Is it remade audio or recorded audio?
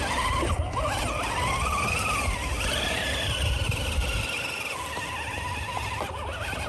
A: recorded